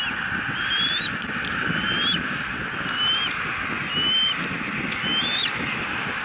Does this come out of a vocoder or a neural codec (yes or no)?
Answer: no